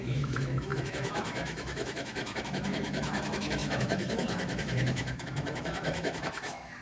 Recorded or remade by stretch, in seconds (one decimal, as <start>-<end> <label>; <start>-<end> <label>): 0.0-6.8 remade